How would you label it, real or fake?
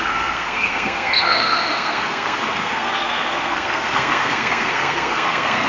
fake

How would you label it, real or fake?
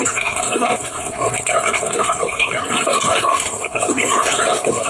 fake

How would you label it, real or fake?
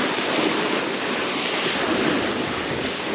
real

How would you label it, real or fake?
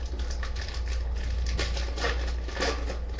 real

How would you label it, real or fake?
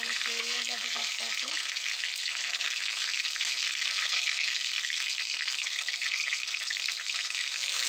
fake